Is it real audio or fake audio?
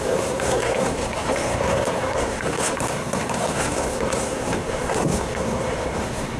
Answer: fake